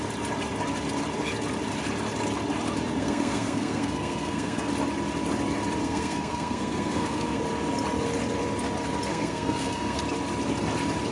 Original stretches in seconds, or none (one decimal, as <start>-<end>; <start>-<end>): 0.0-3.0; 4.7-5.8; 7.4-9.1; 10.0-11.1